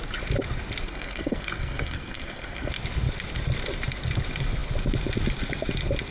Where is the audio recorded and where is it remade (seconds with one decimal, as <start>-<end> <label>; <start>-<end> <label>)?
0.0-0.9 recorded; 0.9-2.7 remade; 2.7-6.1 recorded